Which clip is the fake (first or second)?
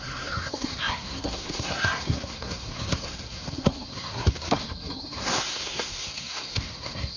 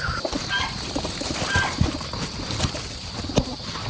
first